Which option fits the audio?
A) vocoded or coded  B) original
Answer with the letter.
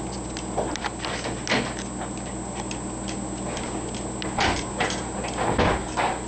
B